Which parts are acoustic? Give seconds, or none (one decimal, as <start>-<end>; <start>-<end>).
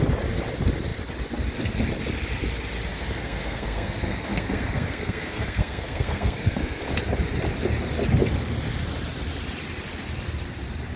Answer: 0.0-2.9; 6.8-11.0